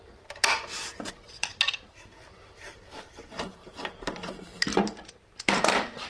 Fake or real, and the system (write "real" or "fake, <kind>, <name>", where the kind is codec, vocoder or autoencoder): fake, vocoder, BigVGAN v2